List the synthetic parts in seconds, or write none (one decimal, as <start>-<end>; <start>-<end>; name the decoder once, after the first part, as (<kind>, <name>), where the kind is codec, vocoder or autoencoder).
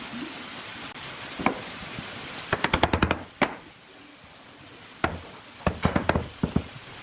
0.7-2.1 (vocoder, BigVGAN v2)